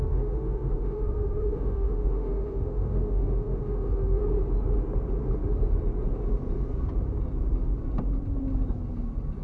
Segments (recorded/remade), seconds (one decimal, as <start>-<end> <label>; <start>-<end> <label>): 0.0-4.2 remade; 4.2-9.4 recorded